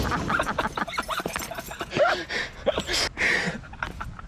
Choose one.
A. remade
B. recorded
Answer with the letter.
B